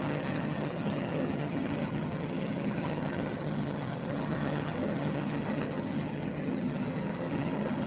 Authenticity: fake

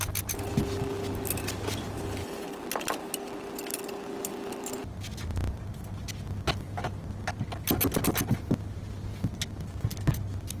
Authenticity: real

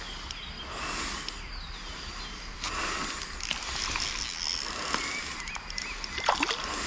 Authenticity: real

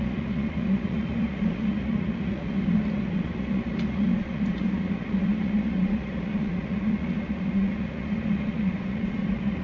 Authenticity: fake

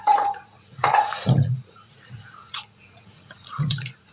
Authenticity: fake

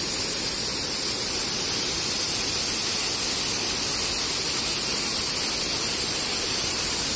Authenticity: real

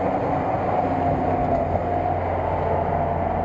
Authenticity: real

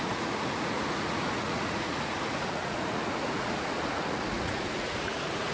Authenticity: fake